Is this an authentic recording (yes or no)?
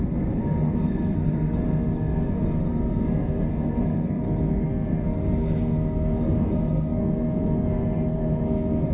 no